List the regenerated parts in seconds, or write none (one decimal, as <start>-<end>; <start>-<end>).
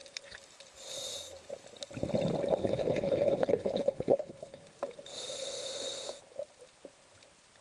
2.6-4.6